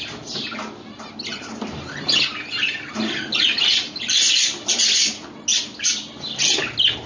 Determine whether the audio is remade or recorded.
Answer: recorded